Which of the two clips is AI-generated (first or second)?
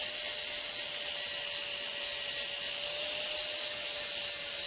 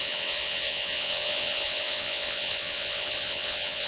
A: second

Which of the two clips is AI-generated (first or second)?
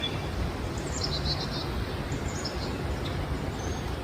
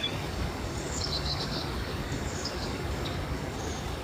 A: second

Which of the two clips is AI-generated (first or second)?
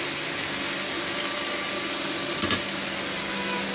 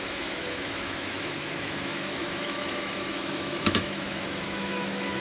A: second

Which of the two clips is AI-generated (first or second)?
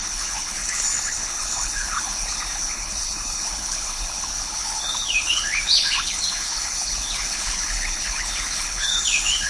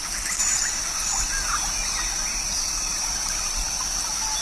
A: first